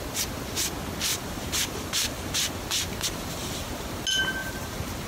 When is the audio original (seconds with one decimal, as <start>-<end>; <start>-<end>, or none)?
0.0-1.1; 3.8-4.4